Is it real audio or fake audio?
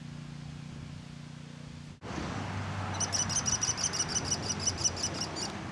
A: real